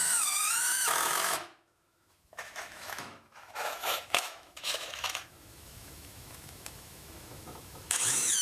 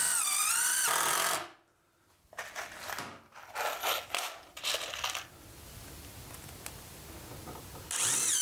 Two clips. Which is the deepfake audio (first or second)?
first